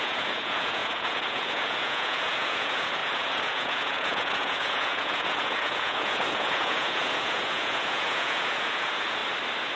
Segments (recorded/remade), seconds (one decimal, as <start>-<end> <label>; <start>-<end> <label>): 0.0-9.2 remade; 9.2-9.8 recorded

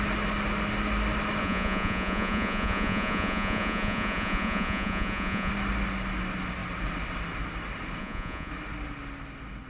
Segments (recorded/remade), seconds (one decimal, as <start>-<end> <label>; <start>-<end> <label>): 0.0-1.4 recorded; 1.4-5.5 remade; 5.5-8.0 recorded; 8.0-8.5 remade; 8.5-9.7 recorded